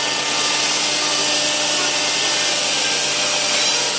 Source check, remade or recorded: recorded